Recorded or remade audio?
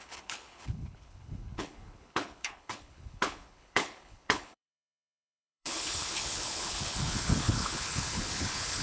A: remade